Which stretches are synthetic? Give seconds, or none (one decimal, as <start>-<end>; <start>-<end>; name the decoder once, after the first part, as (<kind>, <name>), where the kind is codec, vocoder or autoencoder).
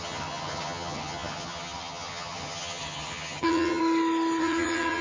0.0-3.8 (vocoder, HiFi-GAN); 4.4-5.0